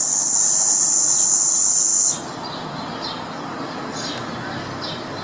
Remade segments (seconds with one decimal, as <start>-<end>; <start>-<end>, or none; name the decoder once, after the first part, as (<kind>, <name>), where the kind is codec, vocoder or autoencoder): none